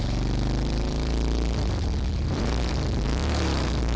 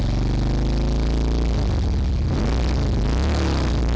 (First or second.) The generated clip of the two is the first